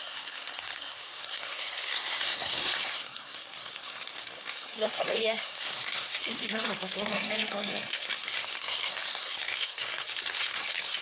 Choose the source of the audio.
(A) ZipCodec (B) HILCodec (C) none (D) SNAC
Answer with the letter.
D